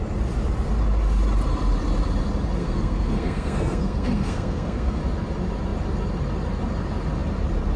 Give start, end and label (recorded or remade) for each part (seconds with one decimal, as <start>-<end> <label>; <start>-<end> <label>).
0.0-2.6 recorded; 2.6-5.0 remade; 5.0-7.8 recorded